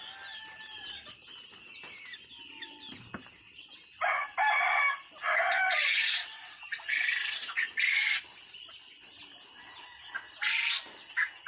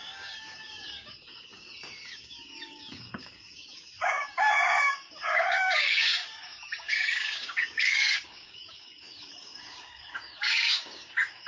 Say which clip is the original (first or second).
first